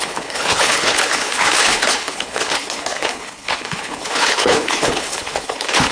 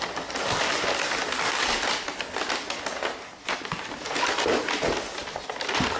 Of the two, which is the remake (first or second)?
first